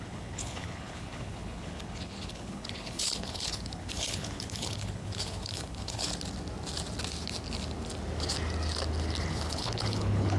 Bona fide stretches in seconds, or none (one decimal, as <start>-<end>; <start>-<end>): 6.1-9.3